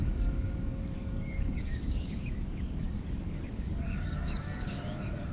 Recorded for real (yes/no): no